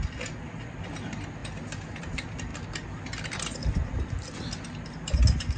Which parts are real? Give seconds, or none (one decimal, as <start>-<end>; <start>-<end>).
0.0-5.6